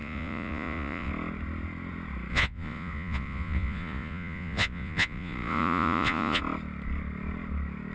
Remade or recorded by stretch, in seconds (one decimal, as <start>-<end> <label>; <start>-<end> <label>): 0.0-1.1 remade; 1.1-2.3 recorded; 2.3-6.4 remade; 6.4-7.9 recorded